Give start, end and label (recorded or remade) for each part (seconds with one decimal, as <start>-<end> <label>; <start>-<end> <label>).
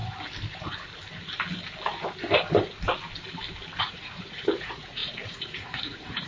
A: 0.0-3.8 recorded; 3.8-6.3 remade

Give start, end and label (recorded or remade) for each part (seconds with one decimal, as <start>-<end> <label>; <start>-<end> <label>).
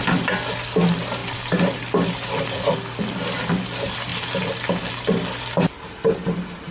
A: 0.0-6.7 recorded